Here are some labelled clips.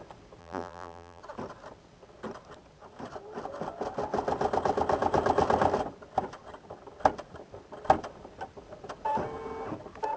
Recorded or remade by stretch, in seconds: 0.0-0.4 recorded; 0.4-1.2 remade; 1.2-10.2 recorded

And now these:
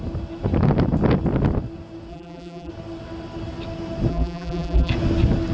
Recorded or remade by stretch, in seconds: 0.0-2.1 recorded; 2.1-2.7 remade; 2.7-4.1 recorded; 4.1-4.9 remade; 4.9-5.5 recorded